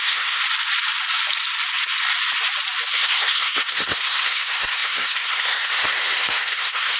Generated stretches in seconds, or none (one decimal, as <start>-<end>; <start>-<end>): 0.0-0.4; 2.9-7.0